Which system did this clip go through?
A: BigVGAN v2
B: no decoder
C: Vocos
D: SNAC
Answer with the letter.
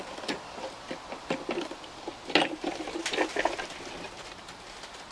B